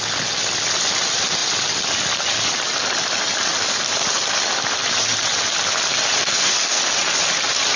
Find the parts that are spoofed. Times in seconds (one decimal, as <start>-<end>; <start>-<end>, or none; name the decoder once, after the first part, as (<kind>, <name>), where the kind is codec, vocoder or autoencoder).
6.2-6.8 (codec, SNAC)